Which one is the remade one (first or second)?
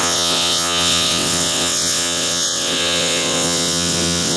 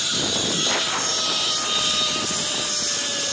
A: first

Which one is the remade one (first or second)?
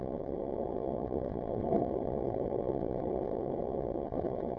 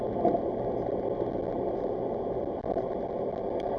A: first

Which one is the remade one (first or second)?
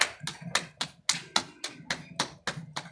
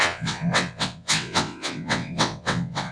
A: second